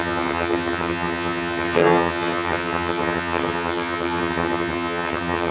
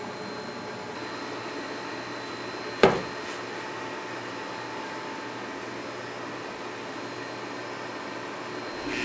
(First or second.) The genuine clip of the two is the second